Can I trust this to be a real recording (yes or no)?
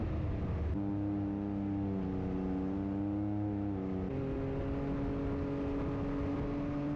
yes